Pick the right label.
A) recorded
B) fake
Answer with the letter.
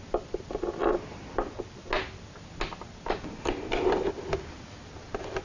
A